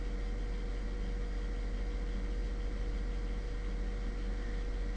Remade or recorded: recorded